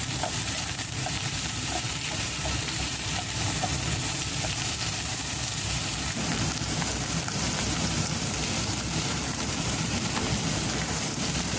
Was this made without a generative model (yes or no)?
no